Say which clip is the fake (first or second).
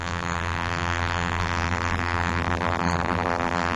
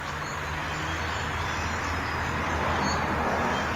first